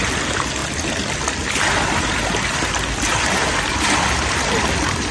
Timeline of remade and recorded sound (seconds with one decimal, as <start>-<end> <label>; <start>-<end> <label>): 0.0-5.1 recorded